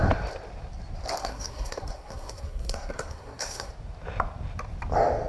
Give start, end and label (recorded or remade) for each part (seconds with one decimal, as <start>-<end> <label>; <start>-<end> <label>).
0.0-1.2 recorded; 1.2-3.7 remade; 3.7-5.3 recorded

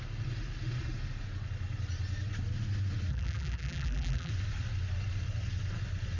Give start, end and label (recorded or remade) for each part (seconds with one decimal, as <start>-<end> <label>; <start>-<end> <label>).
0.0-3.1 recorded; 3.1-4.3 remade; 4.3-6.2 recorded

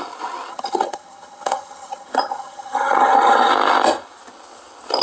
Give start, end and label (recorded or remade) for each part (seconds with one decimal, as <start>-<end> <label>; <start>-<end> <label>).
0.0-0.5 recorded; 0.5-3.5 remade; 3.5-5.0 recorded

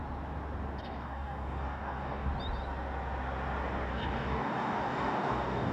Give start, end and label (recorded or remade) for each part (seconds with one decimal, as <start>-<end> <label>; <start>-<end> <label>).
0.0-0.8 recorded; 0.8-2.3 remade; 2.3-3.9 recorded; 3.9-5.7 remade

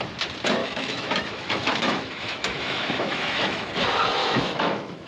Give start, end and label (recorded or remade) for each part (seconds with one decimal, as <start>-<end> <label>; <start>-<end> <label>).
0.0-0.6 recorded; 0.6-3.7 remade; 3.7-4.2 recorded; 4.2-5.1 remade

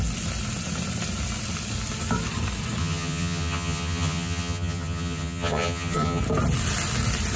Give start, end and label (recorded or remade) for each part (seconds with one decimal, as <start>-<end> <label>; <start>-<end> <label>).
0.0-2.8 recorded; 2.8-6.2 remade; 6.2-7.4 recorded